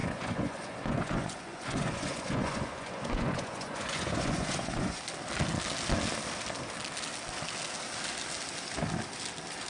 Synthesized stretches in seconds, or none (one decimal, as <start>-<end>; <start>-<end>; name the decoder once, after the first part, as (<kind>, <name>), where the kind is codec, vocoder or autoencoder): 0.0-5.0 (vocoder, Vocos)